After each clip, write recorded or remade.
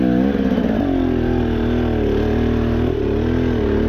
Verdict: recorded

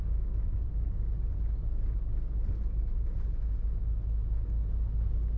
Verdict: recorded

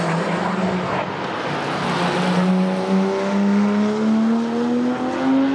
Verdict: recorded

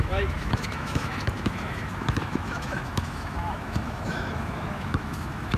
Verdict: remade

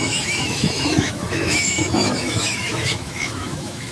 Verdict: remade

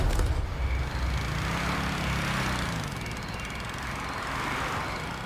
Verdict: recorded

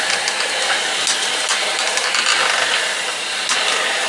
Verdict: recorded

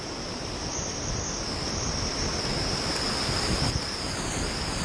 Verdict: recorded